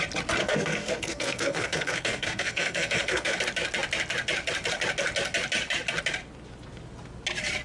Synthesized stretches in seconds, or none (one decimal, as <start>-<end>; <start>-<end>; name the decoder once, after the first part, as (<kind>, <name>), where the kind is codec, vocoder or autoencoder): 0.4-3.4 (codec, SNAC)